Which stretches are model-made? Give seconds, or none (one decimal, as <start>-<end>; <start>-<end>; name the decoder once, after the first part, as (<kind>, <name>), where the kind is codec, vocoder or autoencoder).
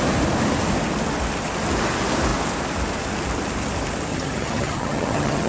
4.1-5.5 (vocoder, HiFi-GAN)